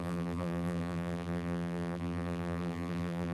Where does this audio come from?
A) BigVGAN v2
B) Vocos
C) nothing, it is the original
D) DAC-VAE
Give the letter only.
A